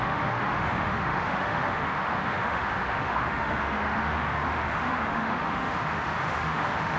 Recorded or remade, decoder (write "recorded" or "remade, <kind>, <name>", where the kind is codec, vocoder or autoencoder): remade, autoencoder, DAC-VAE